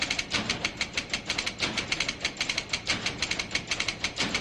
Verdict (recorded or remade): recorded